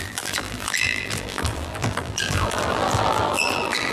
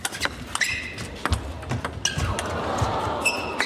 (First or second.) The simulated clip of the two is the first